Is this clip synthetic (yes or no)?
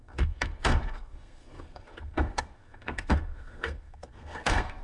yes